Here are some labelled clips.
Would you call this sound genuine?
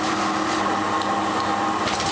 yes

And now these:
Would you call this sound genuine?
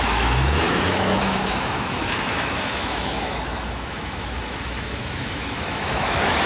no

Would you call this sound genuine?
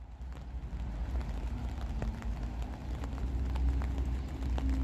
yes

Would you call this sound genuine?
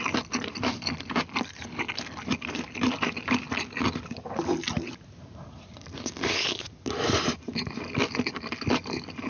yes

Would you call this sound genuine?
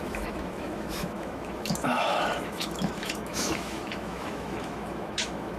no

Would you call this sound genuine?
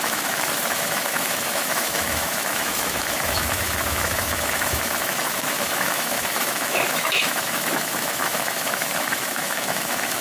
no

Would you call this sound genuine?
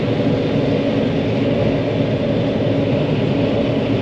yes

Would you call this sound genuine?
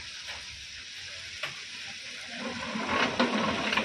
yes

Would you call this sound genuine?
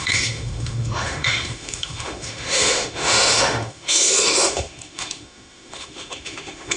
no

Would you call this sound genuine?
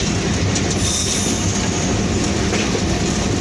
yes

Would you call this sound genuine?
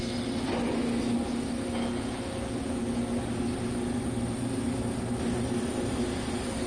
yes